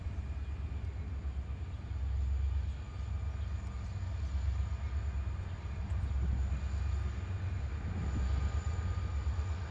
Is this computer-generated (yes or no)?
no